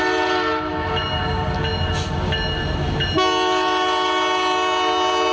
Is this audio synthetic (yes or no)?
no